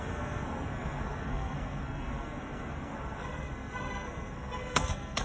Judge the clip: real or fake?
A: fake